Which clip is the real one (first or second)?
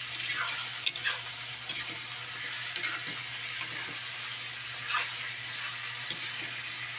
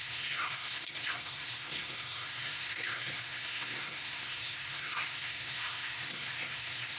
first